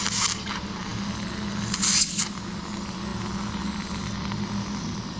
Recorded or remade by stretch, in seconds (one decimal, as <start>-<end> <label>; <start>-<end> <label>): 0.0-5.2 recorded